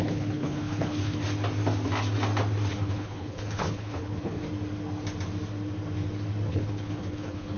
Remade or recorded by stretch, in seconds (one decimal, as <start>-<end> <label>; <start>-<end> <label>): 0.0-1.2 remade; 1.2-2.7 recorded; 2.7-4.4 remade; 4.4-6.5 recorded; 6.5-7.6 remade